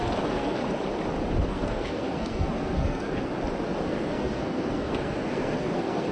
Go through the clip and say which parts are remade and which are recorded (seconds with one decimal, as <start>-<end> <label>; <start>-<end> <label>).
0.0-0.6 remade; 0.6-1.5 recorded; 1.5-3.3 remade; 3.3-3.8 recorded; 3.8-6.1 remade